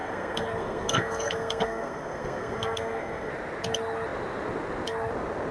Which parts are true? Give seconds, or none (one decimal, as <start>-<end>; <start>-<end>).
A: 3.3-5.5